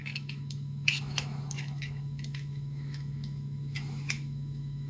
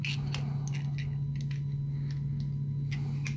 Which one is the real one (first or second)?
second